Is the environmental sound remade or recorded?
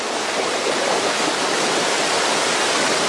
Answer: recorded